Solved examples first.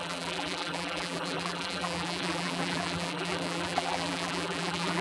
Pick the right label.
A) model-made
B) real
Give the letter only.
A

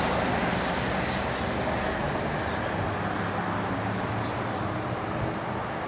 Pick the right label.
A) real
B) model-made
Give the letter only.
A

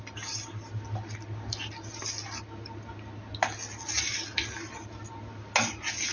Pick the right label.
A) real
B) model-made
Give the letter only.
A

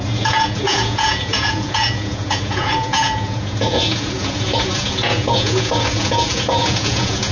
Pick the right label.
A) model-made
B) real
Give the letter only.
A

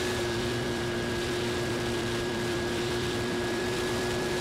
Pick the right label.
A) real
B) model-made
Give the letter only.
B